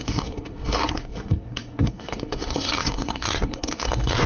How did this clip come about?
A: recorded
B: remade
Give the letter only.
B